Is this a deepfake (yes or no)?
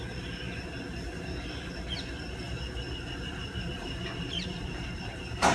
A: no